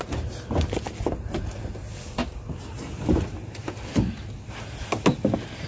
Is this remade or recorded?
recorded